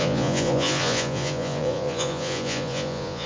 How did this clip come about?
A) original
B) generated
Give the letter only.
B